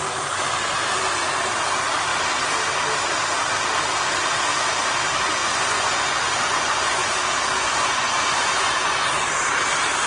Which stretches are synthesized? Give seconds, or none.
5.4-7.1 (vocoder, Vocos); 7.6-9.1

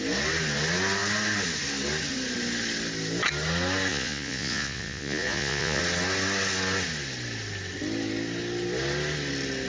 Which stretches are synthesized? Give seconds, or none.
3.9-5.8 (vocoder, Vocos)

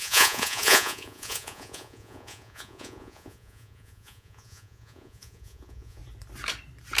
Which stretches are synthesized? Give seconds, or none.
0.0-6.0 (vocoder, Vocos)

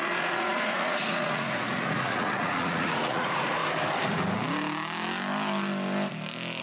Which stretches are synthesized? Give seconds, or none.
0.0-3.6 (vocoder, Vocos)

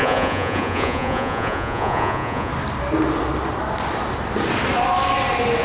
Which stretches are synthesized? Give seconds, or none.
0.0-2.5 (vocoder, Vocos)